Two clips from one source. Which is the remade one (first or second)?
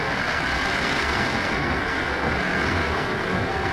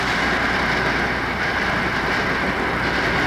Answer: first